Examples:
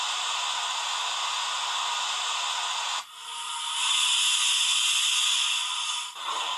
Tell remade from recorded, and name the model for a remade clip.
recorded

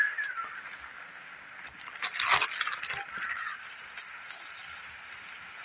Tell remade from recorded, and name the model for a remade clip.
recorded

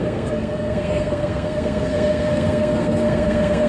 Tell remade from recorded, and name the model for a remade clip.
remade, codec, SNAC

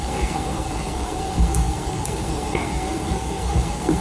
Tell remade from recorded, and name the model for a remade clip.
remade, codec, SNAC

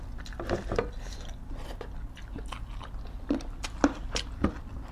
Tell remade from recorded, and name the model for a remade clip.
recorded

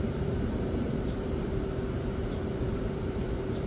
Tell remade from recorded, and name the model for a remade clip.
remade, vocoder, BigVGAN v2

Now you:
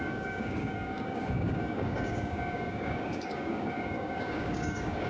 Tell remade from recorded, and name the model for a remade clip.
remade, codec, DAC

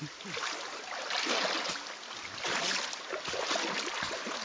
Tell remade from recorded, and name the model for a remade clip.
recorded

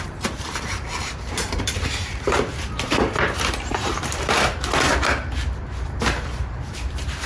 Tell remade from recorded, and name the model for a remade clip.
remade, vocoder, BigVGAN v2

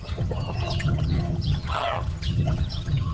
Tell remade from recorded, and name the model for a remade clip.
remade, vocoder, HiFi-GAN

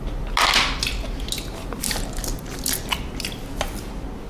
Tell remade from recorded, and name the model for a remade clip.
recorded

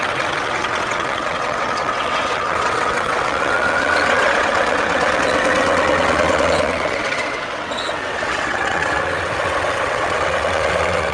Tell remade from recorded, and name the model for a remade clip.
remade, vocoder, WaveNeXt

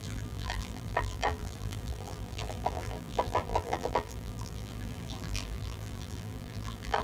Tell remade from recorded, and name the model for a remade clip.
remade, vocoder, BigVGAN v2